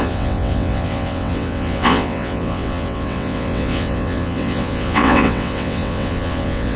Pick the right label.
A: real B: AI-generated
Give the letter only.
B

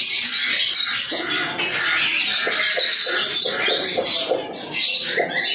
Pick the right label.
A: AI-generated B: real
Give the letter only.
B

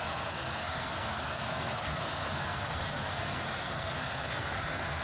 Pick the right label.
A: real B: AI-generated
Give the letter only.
B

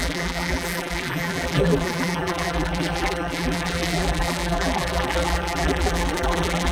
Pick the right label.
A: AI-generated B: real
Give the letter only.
A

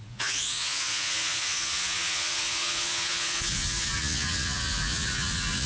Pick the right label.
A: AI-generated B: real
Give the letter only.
A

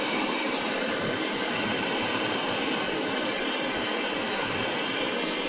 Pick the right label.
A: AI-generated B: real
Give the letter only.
B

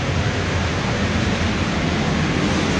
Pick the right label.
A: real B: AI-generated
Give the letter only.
A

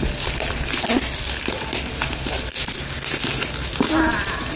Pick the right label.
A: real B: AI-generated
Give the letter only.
A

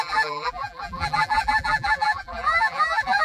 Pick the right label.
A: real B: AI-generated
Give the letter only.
B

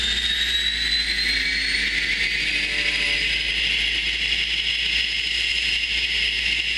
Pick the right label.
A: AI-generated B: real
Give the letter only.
B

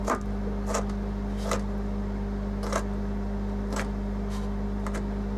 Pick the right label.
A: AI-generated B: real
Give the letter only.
B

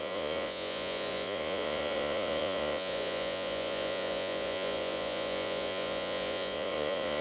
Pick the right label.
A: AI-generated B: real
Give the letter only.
A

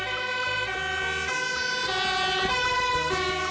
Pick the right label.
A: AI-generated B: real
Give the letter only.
B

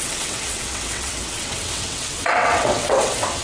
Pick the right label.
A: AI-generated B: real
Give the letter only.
A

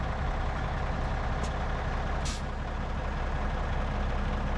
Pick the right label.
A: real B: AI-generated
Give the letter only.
A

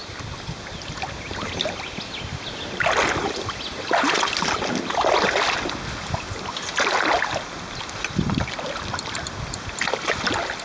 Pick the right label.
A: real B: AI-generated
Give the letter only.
A